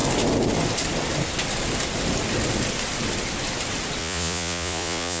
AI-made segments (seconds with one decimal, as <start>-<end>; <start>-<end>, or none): 4.0-5.2